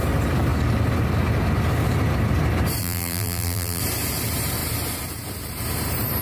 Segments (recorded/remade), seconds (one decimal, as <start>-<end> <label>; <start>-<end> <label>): 0.0-2.8 recorded; 2.8-3.8 remade; 3.8-6.2 recorded